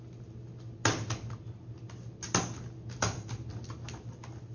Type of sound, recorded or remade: recorded